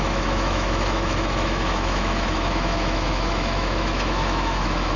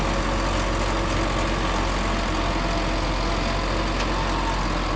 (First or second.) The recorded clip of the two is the second